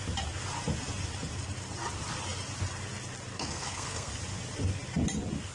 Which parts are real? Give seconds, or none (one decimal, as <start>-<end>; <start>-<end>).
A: 0.0-3.3; 4.1-5.5

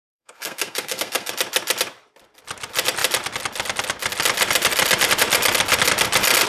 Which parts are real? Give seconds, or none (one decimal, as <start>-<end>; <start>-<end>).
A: 1.3-6.5

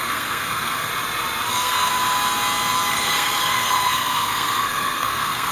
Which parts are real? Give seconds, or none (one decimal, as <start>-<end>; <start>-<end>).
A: 0.9-1.5; 1.9-2.9

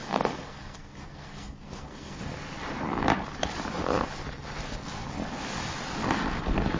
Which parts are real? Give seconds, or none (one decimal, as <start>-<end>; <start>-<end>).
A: 2.2-6.8

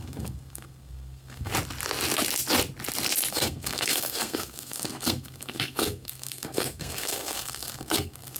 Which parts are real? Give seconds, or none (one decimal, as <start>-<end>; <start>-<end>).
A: 1.5-3.3